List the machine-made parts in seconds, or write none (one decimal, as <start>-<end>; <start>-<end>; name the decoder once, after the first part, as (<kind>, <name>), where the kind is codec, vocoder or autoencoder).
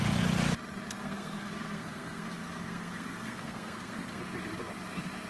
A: 1.0-4.2 (codec, SNAC)